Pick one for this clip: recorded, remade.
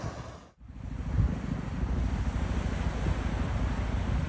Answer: recorded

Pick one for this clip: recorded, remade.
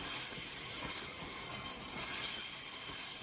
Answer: recorded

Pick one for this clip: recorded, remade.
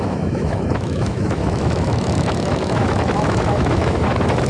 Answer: remade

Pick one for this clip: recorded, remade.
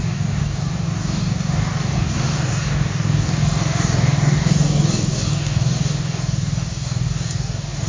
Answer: remade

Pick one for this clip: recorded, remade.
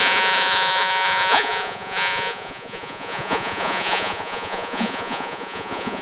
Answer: remade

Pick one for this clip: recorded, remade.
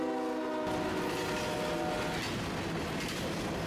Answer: recorded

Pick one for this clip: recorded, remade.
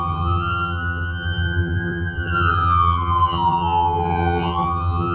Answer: remade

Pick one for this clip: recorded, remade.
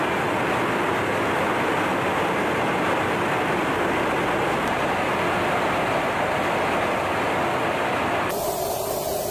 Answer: recorded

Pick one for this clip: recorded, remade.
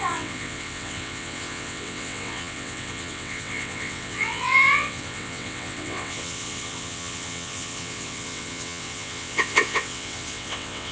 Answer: remade